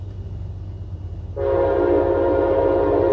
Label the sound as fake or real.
real